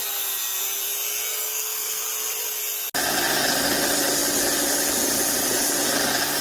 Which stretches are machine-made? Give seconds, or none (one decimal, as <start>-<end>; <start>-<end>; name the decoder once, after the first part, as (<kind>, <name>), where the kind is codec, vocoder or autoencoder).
1.3-2.0 (codec, SNAC)